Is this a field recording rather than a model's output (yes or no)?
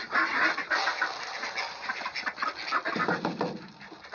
yes